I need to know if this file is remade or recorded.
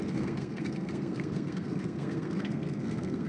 remade